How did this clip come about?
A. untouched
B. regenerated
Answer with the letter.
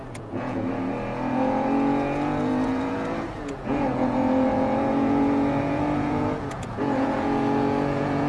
B